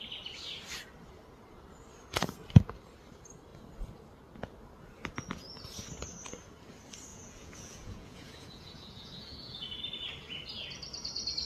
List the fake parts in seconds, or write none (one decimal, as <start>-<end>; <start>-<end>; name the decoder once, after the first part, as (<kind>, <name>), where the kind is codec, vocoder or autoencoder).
7.1-9.8 (vocoder, Vocos)